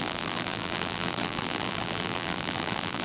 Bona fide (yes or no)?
no